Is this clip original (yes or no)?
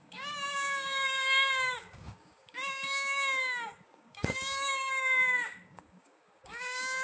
no